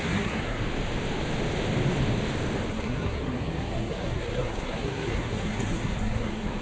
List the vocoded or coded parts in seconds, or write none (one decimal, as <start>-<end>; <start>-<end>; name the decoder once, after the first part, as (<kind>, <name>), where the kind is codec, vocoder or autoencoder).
0.0-0.6 (codec, SNAC); 2.7-6.6